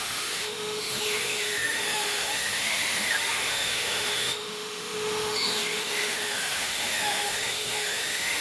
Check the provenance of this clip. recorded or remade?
remade